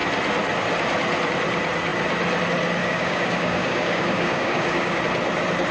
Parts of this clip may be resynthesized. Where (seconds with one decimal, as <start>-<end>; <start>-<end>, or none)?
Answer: 2.8-5.0